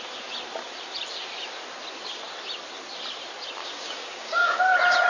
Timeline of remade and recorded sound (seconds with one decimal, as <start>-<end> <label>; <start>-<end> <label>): 0.0-3.6 recorded; 3.6-4.6 remade; 4.6-5.1 recorded